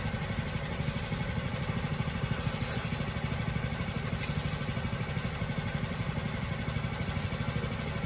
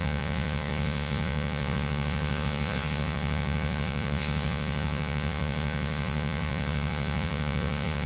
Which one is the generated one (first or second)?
second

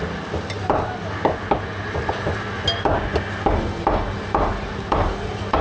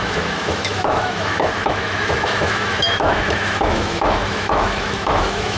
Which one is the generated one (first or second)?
second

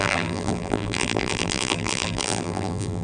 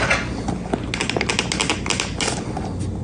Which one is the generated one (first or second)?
first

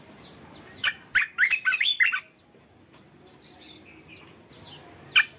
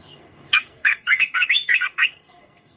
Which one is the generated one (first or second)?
second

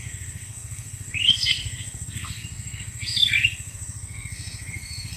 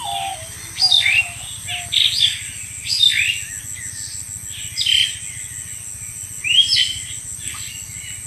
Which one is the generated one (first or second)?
first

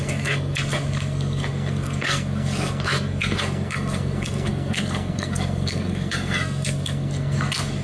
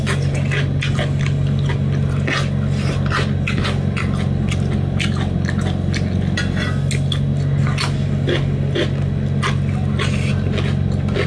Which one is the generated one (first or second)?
first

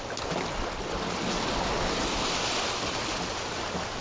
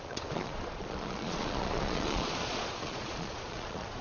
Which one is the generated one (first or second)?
second